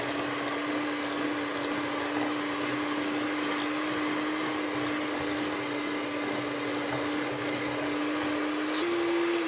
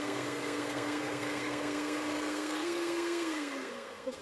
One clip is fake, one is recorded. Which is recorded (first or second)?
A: first